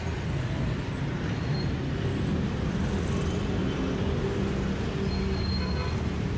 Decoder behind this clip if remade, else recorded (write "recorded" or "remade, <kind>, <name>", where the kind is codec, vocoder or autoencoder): recorded